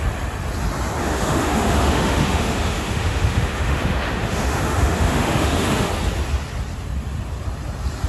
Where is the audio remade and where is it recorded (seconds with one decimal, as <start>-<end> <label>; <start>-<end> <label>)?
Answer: 0.0-1.0 recorded; 1.0-5.9 remade; 5.9-8.1 recorded

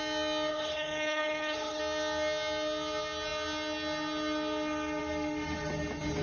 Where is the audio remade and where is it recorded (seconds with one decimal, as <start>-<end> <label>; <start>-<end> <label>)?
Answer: 0.0-0.5 recorded; 0.5-1.8 remade; 1.8-6.2 recorded

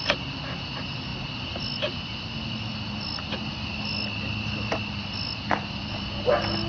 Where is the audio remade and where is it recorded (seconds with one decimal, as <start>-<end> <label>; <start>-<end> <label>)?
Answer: 0.0-6.7 recorded